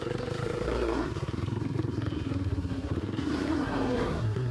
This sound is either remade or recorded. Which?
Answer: remade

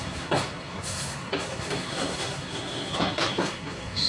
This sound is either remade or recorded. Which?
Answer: remade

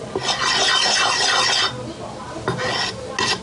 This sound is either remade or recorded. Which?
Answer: recorded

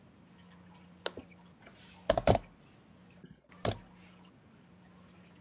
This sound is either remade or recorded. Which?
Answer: recorded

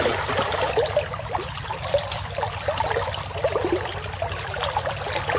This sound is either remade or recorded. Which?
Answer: recorded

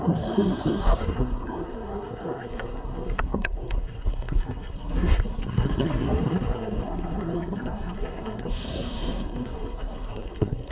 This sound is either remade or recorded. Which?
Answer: remade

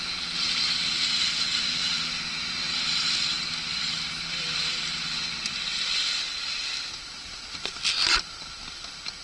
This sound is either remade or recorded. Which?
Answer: recorded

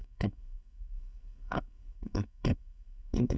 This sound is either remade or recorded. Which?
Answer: remade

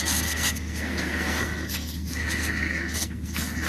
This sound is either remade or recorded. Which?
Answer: remade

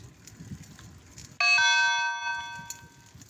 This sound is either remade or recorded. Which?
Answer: recorded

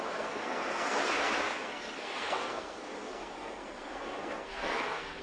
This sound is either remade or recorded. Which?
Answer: remade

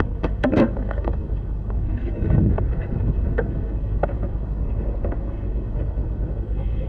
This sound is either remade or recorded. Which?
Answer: remade